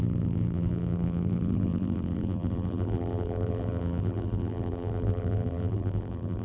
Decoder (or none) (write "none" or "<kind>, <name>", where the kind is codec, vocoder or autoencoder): vocoder, BigVGAN v2